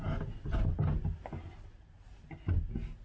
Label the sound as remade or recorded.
recorded